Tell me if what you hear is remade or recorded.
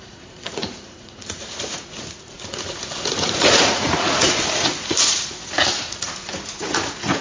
remade